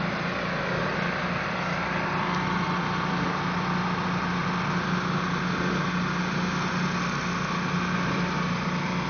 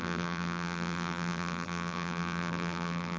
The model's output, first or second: second